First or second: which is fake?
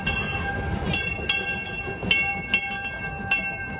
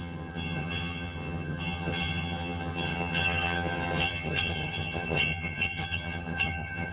second